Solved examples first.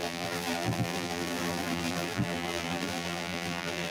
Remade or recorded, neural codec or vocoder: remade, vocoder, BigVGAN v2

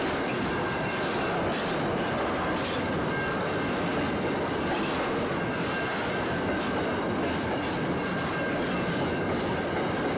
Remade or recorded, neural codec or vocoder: recorded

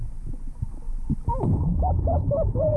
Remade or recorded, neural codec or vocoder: recorded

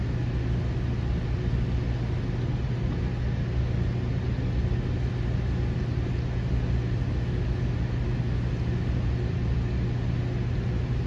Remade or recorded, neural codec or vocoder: recorded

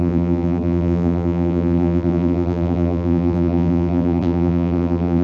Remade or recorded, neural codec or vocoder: remade, vocoder, BigVGAN v2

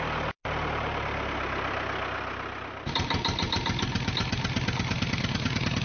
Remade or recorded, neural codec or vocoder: recorded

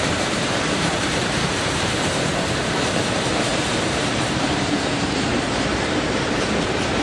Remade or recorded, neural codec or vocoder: remade, vocoder, BigVGAN v2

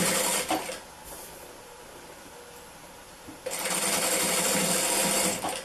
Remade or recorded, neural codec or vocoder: recorded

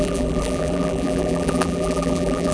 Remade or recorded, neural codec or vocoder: remade, vocoder, BigVGAN v2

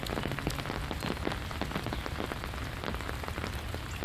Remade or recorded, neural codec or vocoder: recorded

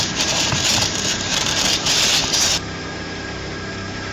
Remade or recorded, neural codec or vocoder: remade, vocoder, BigVGAN v2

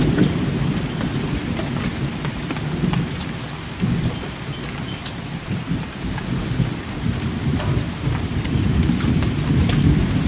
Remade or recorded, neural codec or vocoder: remade, vocoder, BigVGAN v2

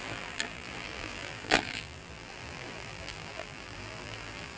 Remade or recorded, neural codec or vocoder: remade, vocoder, BigVGAN v2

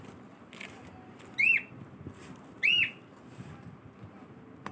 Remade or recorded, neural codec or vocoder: recorded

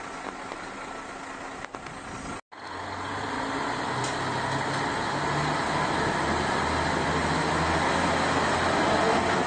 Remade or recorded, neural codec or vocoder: recorded